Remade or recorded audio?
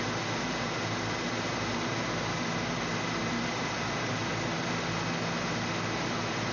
recorded